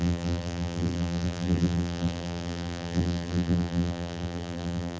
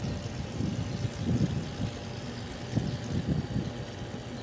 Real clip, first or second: second